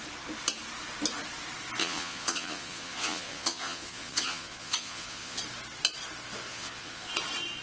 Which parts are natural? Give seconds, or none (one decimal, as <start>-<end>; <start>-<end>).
0.0-1.8; 5.4-6.5; 7.1-7.6